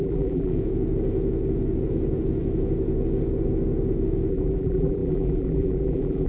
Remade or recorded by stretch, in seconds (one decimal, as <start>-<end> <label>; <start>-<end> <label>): 0.0-0.5 remade; 0.5-4.3 recorded; 4.3-6.3 remade